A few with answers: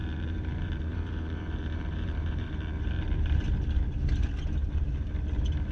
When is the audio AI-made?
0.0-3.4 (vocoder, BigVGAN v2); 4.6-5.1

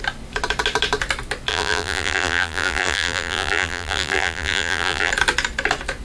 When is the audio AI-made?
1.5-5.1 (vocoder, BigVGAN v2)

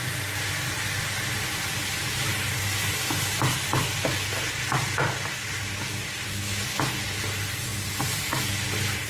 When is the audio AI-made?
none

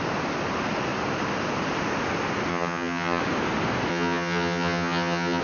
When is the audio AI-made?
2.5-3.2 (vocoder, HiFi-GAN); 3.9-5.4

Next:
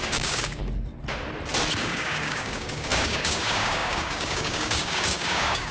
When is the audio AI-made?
0.0-0.6 (codec, DAC); 1.8-5.7

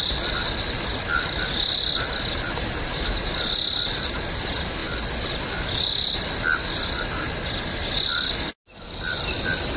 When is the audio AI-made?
none

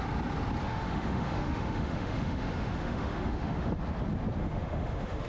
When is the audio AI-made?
0.6-3.8 (autoencoder, DAC-VAE); 4.4-5.3